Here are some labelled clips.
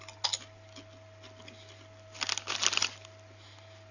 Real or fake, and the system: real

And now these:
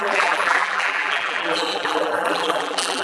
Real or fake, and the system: fake, vocoder, BigVGAN v2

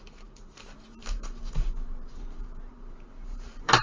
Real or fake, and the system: fake, vocoder, BigVGAN v2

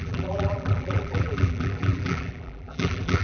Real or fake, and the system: fake, vocoder, BigVGAN v2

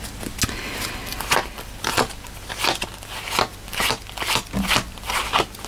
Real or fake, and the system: real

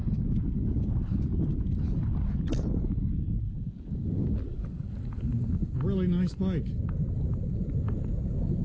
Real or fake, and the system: real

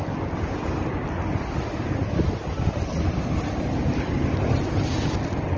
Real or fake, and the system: real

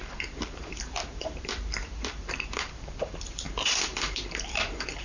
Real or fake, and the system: fake, vocoder, BigVGAN v2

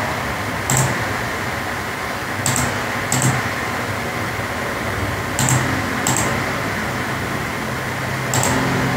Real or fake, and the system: real